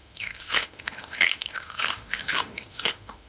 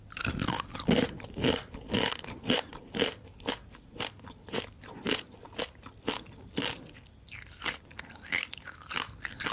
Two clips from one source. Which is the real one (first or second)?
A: second